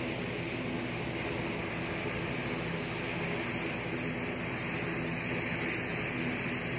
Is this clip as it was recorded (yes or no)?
yes